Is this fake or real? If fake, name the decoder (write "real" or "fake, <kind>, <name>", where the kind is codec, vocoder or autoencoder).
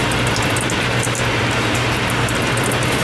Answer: real